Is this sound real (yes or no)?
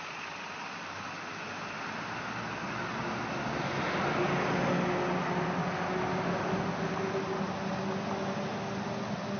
yes